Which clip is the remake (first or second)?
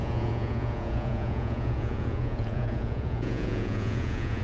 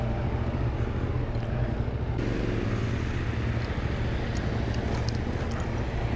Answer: first